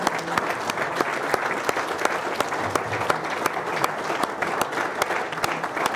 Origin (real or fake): fake